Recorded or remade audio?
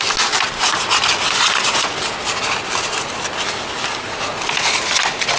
recorded